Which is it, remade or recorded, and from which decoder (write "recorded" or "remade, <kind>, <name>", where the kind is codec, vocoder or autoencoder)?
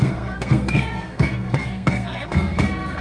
remade, codec, SNAC